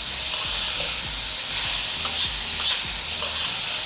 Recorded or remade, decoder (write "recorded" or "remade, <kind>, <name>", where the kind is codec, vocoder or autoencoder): recorded